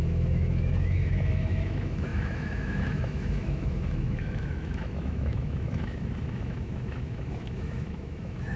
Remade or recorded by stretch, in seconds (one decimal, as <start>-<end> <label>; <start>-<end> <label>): 0.0-8.6 remade